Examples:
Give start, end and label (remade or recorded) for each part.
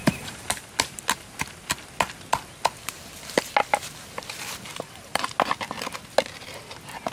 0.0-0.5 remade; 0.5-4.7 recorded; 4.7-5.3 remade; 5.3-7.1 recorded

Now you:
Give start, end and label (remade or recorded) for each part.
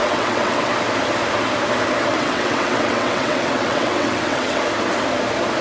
0.0-0.7 remade; 0.7-2.1 recorded; 2.1-4.6 remade; 4.6-5.6 recorded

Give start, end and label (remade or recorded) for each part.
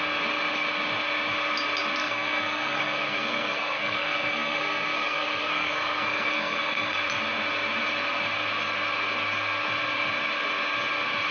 0.0-2.0 recorded; 2.0-7.0 remade; 7.0-11.3 recorded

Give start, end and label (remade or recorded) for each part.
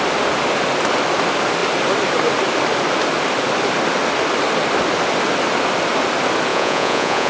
0.0-6.5 recorded; 6.5-7.3 remade